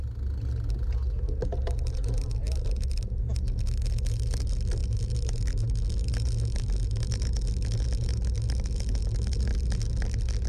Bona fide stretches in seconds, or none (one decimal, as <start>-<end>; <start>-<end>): 0.0-10.5